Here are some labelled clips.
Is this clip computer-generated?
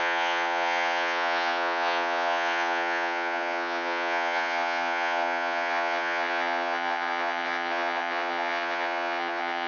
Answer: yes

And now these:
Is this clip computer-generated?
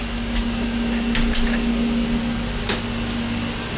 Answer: no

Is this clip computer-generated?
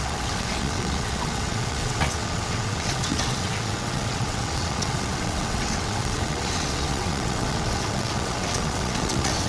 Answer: yes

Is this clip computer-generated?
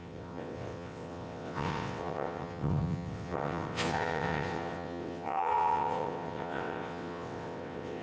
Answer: yes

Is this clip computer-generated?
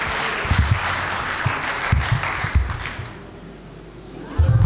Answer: no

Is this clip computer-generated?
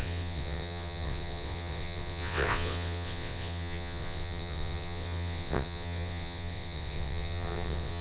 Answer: yes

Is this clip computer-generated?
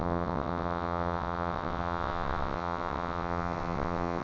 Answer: yes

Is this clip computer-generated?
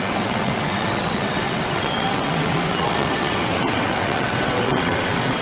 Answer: yes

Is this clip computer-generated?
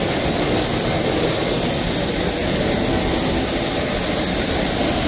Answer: no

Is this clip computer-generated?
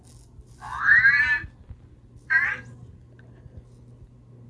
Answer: no